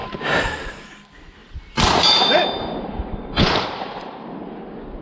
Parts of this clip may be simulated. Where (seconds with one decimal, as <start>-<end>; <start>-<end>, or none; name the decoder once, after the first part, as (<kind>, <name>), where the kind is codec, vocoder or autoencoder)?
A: 0.0-0.5 (vocoder, BigVGAN v2); 1.4-4.4